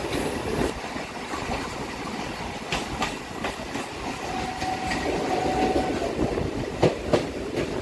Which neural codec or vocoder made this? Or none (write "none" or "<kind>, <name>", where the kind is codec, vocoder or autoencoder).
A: none